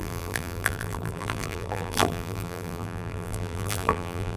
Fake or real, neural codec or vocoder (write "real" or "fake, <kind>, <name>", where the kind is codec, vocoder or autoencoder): fake, vocoder, BigVGAN v2